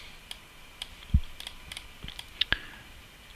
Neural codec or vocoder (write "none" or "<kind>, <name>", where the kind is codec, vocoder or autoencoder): none